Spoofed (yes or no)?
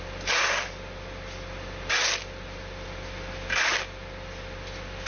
no